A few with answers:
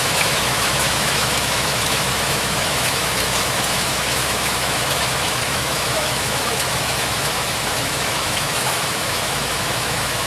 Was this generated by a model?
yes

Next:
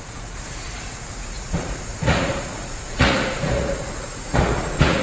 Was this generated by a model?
yes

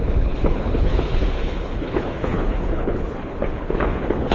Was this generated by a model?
yes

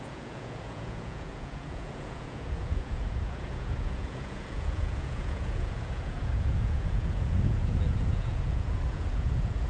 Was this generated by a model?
yes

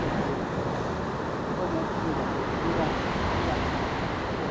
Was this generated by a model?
no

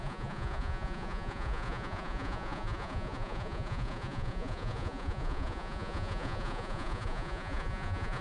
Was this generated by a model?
yes